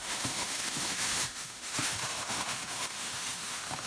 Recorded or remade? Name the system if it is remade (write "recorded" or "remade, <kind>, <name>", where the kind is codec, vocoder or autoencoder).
remade, autoencoder, DAC-VAE